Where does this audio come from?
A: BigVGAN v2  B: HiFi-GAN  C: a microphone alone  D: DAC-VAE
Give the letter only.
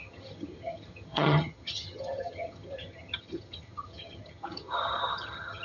B